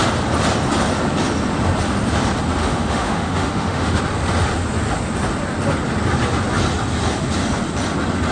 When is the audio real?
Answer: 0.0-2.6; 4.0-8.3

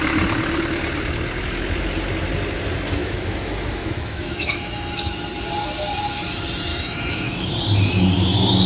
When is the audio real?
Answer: 0.0-3.0; 5.1-6.7; 7.5-8.7

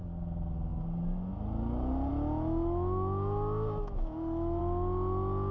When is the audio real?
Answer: 0.0-2.1; 4.6-5.5